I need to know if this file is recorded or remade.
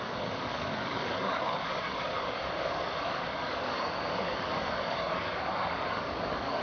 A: remade